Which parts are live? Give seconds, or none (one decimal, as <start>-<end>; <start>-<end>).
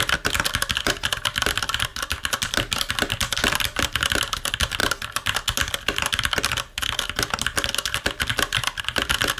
0.0-9.4